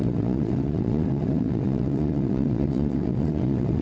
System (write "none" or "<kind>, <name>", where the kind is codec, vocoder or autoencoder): vocoder, WaveNeXt